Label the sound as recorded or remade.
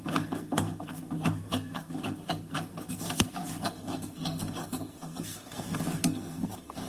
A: remade